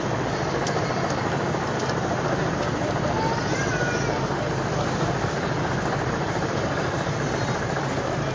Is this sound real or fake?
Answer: fake